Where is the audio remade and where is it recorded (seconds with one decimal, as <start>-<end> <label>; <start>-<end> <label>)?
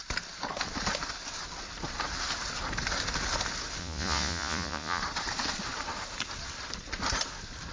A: 0.0-3.8 recorded; 3.8-5.0 remade; 5.0-7.7 recorded